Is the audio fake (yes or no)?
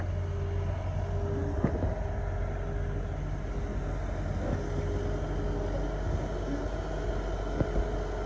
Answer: no